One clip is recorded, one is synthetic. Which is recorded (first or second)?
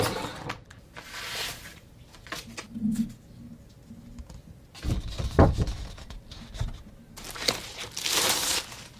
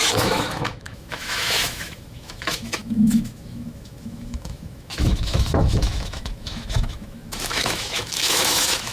first